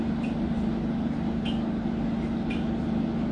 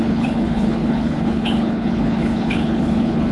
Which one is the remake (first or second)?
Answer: second